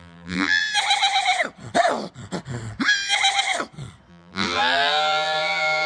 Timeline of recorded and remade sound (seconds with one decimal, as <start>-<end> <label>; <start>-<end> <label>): 0.0-0.6 remade; 0.6-4.1 recorded; 4.1-5.9 remade